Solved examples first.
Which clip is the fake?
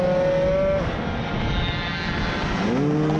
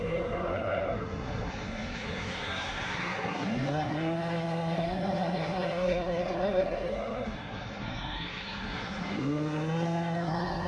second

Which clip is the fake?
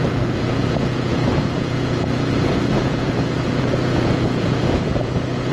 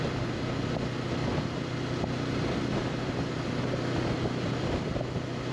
first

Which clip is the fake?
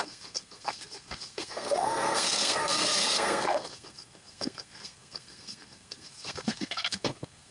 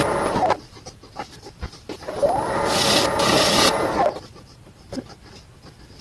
first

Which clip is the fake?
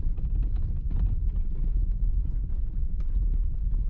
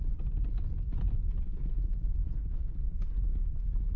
first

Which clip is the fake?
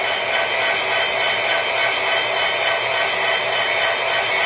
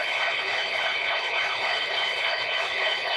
second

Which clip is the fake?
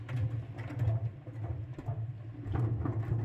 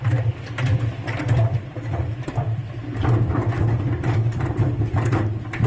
second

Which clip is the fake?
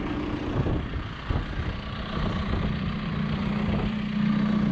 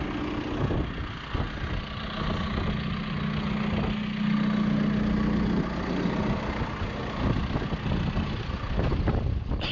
first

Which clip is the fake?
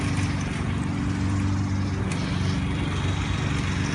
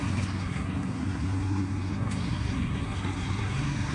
second